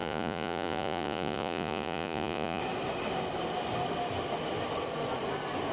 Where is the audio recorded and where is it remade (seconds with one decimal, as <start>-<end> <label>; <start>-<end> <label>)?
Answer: 0.0-2.6 remade; 2.6-5.7 recorded